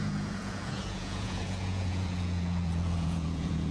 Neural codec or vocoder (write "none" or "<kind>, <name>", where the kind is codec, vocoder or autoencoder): vocoder, Vocos